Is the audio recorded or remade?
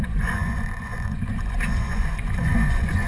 remade